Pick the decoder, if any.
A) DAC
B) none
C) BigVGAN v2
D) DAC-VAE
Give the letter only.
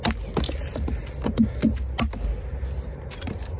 B